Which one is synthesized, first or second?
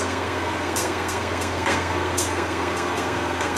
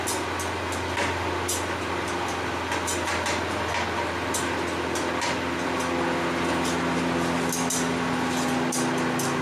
first